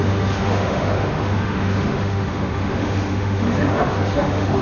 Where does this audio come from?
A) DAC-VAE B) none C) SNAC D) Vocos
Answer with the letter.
A